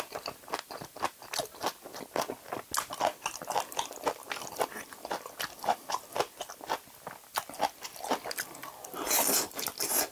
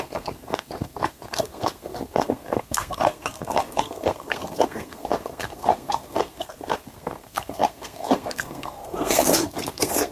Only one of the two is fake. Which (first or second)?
second